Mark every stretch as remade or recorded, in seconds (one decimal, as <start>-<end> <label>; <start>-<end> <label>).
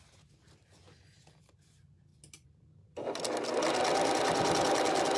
0.0-5.2 recorded